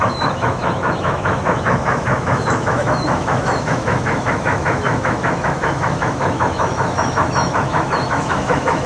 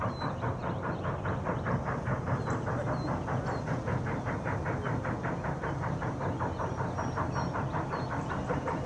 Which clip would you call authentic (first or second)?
second